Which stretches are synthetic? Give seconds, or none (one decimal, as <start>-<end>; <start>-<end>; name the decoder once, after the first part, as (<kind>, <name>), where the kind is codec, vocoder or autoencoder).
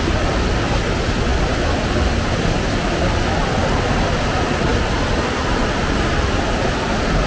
none